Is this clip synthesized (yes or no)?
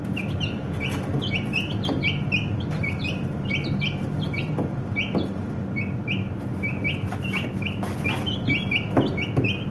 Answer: no